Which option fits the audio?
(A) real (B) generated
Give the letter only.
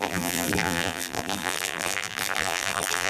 B